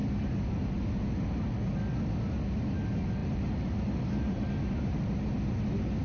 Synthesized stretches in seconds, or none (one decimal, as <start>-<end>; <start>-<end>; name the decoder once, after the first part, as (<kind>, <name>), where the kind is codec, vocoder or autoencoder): 3.2-5.3 (vocoder, BigVGAN v2)